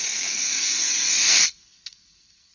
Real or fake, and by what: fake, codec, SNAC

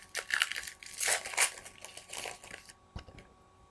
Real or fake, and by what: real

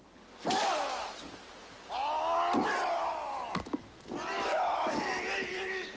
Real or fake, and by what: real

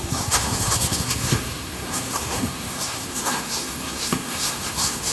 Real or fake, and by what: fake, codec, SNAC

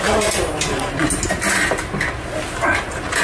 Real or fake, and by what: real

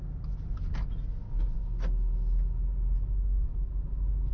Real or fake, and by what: real